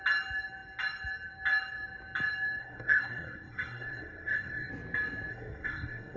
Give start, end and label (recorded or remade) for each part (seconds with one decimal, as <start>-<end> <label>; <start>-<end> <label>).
0.0-2.6 recorded; 2.6-4.7 remade; 4.7-5.3 recorded; 5.3-6.2 remade